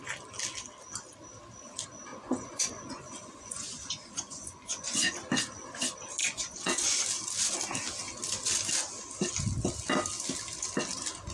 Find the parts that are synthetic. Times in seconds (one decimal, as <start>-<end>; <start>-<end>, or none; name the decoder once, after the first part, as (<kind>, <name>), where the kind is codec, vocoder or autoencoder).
2.1-5.1 (vocoder, Vocos); 6.2-7.0